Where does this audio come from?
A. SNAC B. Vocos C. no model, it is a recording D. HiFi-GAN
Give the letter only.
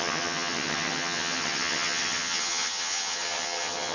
D